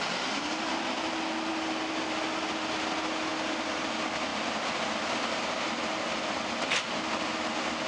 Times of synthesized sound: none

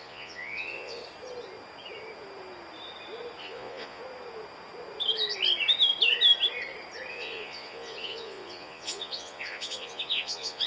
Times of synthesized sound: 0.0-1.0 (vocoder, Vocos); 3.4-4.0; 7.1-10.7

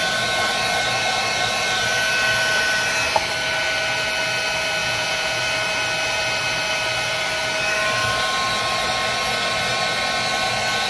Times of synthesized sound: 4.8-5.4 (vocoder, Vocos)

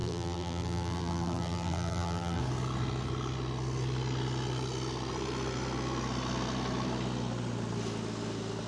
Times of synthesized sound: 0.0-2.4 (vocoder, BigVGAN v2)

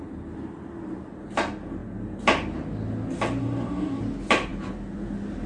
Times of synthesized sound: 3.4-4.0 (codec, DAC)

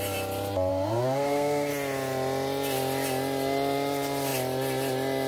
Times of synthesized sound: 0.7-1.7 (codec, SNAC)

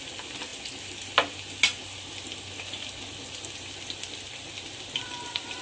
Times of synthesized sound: none

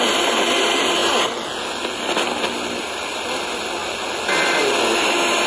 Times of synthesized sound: none